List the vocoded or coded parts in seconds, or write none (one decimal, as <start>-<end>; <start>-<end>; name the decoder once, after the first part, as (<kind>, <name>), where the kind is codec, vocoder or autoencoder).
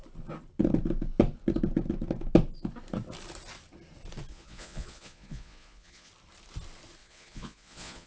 4.3-6.1 (vocoder, Vocos); 7.0-8.1